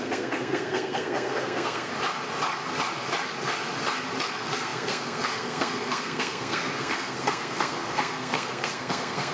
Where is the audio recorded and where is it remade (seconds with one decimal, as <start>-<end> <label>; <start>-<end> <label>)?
0.0-1.9 remade; 1.9-4.2 recorded; 4.2-9.3 remade